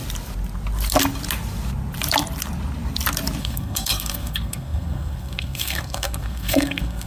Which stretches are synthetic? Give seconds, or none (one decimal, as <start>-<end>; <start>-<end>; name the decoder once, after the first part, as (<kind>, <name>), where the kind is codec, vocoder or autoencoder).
3.4-7.1 (codec, SNAC)